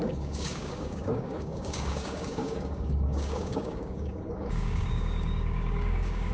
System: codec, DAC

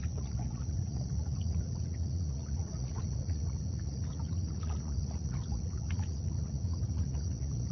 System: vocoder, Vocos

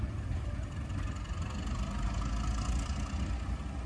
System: none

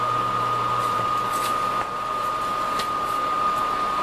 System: none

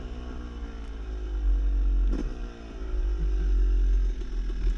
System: none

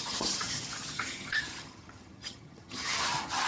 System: vocoder, HiFi-GAN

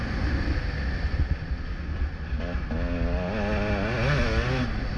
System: none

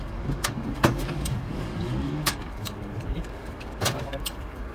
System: codec, DAC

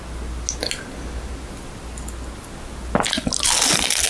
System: none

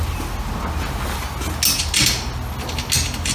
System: none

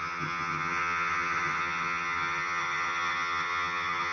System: vocoder, HiFi-GAN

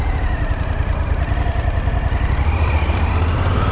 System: vocoder, BigVGAN v2